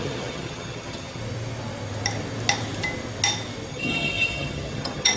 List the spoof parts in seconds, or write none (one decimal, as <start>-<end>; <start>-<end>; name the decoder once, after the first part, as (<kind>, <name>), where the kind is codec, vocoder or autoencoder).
0.0-1.2 (vocoder, HiFi-GAN); 3.7-5.2